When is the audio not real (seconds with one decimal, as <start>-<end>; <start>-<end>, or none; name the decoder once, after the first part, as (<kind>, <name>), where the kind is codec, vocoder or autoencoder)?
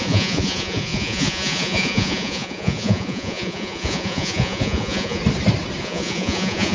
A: 0.0-5.2 (vocoder, Vocos); 5.8-6.7